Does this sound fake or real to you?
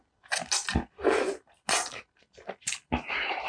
real